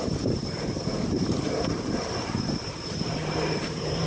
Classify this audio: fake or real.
fake